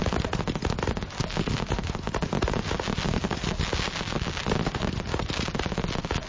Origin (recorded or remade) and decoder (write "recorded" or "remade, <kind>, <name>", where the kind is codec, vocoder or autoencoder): recorded